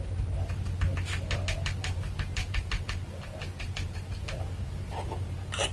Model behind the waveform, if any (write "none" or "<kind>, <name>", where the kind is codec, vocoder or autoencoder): none